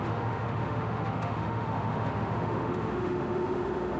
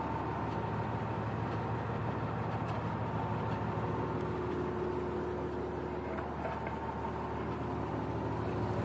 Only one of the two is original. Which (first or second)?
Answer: second